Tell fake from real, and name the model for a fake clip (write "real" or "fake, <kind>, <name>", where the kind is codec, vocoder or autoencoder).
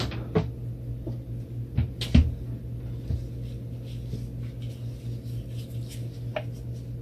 real